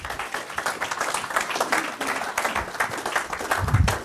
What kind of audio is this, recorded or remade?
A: recorded